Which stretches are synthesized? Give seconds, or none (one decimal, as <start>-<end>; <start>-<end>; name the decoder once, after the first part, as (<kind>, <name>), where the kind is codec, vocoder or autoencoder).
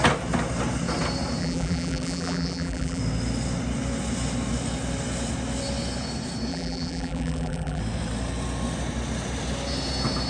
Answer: 1.4-3.0 (vocoder, BigVGAN v2); 6.5-7.8